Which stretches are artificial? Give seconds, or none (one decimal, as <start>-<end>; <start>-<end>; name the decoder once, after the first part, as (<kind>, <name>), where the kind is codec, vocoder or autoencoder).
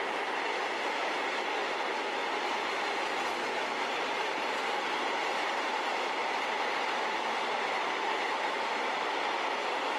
0.0-1.6 (vocoder, BigVGAN v2); 4.2-10.0